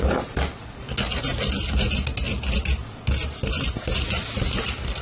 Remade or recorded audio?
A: recorded